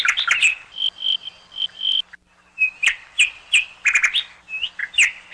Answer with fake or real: real